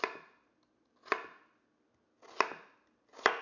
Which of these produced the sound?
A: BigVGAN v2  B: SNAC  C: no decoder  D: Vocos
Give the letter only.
C